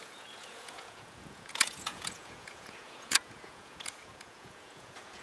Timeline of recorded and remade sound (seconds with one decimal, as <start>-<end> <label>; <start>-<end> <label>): 0.0-5.2 remade